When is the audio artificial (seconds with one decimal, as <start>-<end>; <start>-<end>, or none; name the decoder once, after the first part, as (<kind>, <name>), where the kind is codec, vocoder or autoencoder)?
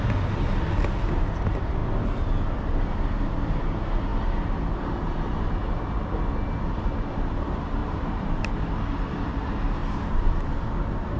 7.8-8.4 (vocoder, BigVGAN v2); 9.8-10.5